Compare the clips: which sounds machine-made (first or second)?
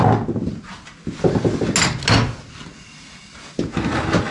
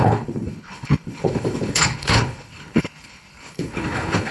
second